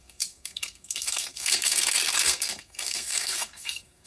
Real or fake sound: fake